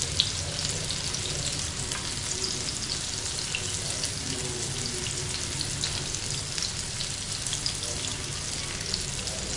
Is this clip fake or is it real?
real